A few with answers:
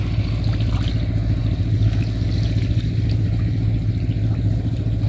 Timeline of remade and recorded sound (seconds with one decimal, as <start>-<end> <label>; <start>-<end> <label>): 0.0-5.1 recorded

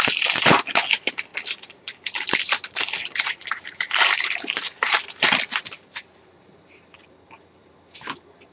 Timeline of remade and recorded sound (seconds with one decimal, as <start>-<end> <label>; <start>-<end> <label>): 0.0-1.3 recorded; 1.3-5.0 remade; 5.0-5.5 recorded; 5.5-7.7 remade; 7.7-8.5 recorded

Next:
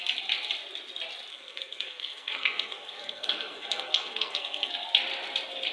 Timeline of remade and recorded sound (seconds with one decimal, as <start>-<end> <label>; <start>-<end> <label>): 0.0-1.3 recorded; 1.3-4.7 remade; 4.7-5.7 recorded

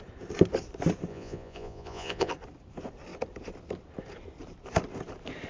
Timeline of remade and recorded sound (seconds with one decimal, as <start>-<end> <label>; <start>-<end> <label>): 0.0-1.1 recorded; 1.1-2.3 remade; 2.3-5.5 recorded